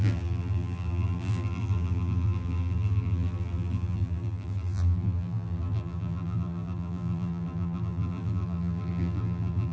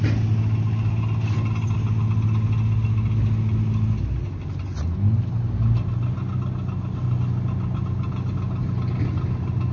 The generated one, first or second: first